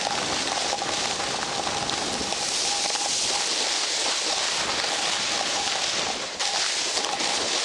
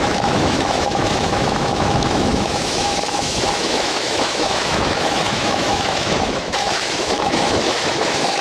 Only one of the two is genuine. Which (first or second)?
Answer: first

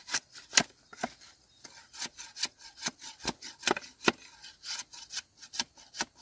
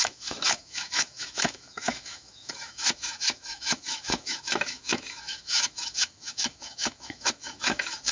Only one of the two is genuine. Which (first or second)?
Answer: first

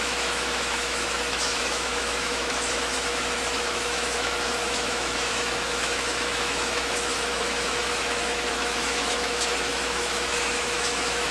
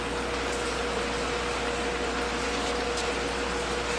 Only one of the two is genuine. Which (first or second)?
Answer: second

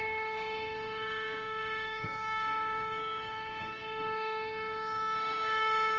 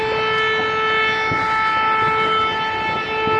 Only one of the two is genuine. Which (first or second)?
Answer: second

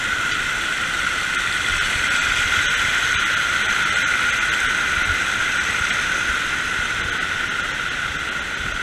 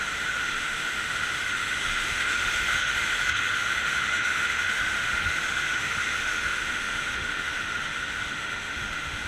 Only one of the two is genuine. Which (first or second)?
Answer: first